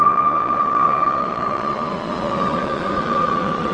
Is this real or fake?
fake